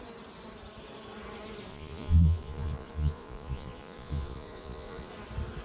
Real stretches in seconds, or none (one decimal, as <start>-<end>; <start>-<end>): 0.0-1.7; 5.1-5.6